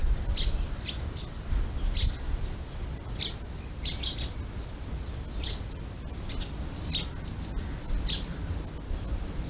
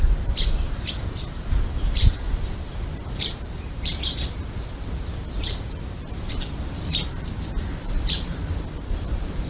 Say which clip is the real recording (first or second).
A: first